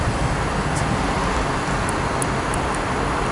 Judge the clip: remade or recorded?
recorded